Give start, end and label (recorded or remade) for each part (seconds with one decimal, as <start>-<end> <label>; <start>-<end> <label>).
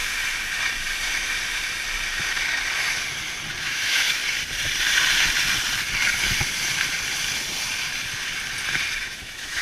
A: 0.0-3.6 recorded; 3.6-4.2 remade; 4.2-9.0 recorded; 9.0-9.6 remade